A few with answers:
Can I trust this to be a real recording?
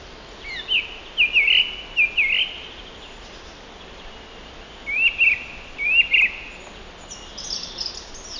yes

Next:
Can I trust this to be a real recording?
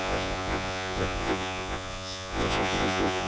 no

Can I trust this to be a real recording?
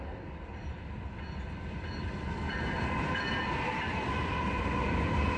yes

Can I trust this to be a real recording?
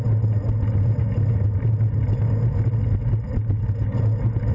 yes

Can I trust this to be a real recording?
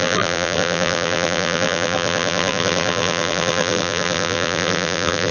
no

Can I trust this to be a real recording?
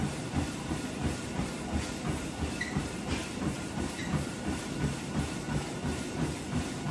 no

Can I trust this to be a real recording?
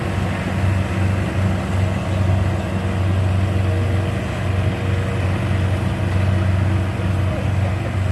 yes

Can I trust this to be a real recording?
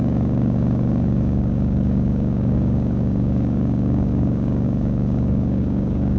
no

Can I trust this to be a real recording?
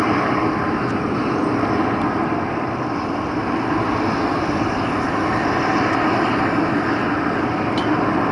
yes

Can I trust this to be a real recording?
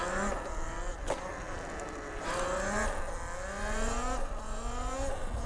yes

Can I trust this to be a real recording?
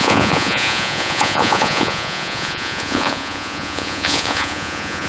no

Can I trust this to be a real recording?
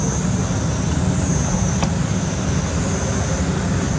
yes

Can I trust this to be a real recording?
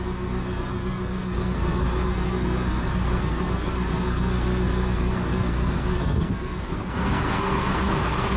no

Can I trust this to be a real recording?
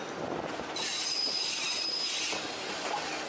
yes